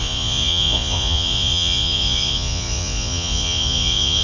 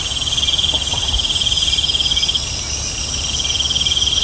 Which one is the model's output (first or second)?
first